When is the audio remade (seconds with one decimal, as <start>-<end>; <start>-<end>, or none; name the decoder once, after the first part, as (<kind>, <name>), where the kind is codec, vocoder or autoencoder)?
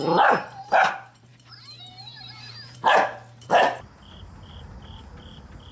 0.0-5.7 (vocoder, BigVGAN v2)